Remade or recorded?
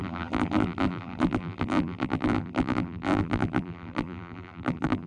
remade